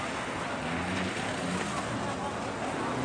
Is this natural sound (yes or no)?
yes